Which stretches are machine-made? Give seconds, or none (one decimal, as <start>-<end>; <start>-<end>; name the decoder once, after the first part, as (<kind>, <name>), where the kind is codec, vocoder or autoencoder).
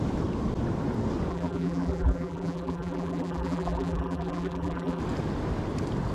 1.3-5.0 (vocoder, BigVGAN v2)